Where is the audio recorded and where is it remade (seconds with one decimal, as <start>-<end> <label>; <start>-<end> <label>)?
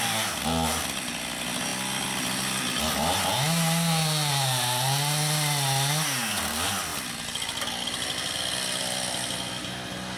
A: 0.0-10.2 recorded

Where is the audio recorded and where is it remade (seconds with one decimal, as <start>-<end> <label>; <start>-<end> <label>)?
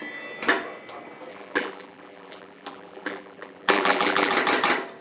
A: 0.0-1.3 recorded; 1.3-4.3 remade; 4.3-5.0 recorded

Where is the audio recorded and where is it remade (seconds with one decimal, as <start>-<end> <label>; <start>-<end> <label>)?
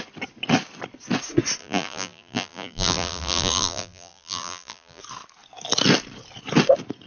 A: 0.0-1.6 recorded; 1.6-5.0 remade; 5.0-7.1 recorded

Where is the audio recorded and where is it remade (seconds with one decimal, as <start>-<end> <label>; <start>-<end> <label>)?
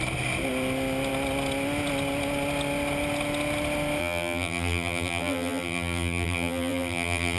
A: 0.0-4.0 recorded; 4.0-7.4 remade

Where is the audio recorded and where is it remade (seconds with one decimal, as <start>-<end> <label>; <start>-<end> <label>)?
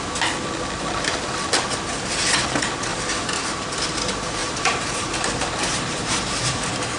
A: 0.0-2.9 recorded; 2.9-3.8 remade; 3.8-4.4 recorded; 4.4-7.0 remade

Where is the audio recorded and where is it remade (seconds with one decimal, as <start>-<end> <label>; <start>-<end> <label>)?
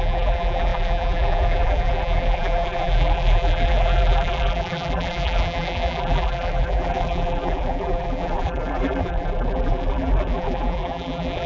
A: 0.0-11.5 remade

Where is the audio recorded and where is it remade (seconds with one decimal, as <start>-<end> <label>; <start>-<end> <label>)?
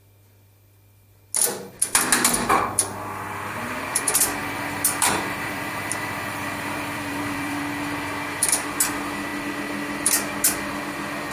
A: 0.0-4.4 recorded; 4.4-7.6 remade; 7.6-11.3 recorded